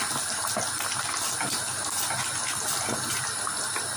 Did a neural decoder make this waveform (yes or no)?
no